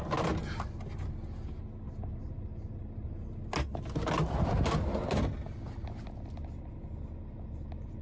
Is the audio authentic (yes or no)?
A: yes